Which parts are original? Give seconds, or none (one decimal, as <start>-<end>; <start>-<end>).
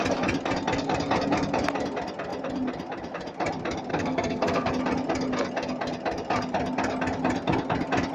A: 0.0-3.9; 4.7-8.1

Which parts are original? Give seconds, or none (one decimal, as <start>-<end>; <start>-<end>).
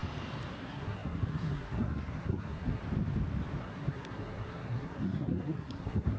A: 0.0-0.5; 2.8-3.6